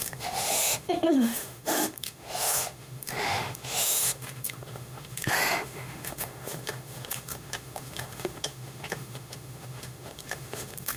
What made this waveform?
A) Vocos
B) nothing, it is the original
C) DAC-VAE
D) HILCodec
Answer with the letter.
C